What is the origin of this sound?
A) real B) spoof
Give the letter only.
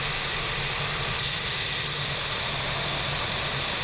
A